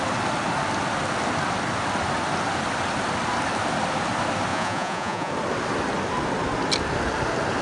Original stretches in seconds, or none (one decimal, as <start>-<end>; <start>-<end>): 0.0-4.5; 5.3-7.6

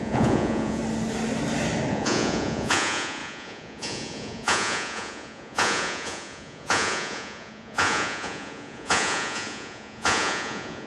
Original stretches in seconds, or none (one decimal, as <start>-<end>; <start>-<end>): 0.8-1.9

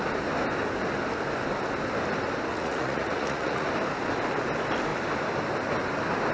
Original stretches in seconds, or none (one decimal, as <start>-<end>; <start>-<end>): 0.0-2.5; 3.7-6.3

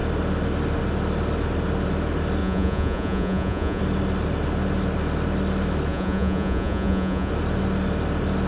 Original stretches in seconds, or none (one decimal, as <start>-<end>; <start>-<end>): 0.0-2.4; 3.8-5.9; 7.3-8.5